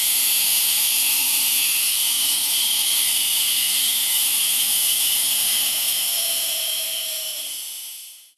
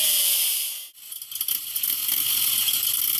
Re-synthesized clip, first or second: first